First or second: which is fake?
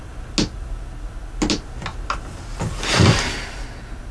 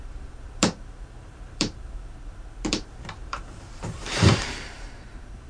second